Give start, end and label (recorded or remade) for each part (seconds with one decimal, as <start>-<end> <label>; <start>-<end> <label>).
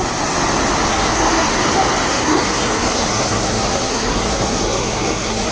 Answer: 0.0-0.9 recorded; 0.9-1.5 remade; 1.5-2.1 recorded; 2.1-5.5 remade